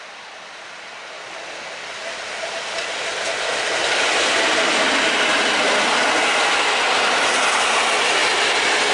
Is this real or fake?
real